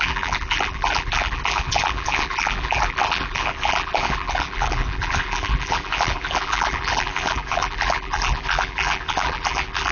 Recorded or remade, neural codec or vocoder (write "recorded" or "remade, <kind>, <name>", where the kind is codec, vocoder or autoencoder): remade, vocoder, BigVGAN v2